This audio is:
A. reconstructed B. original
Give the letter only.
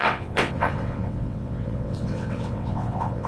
A